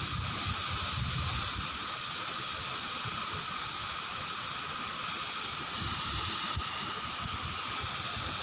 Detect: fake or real real